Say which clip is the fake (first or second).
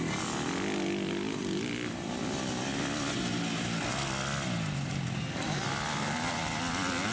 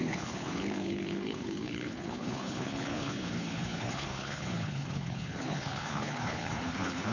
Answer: second